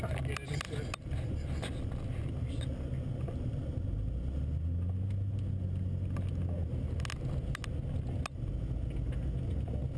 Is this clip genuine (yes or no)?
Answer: yes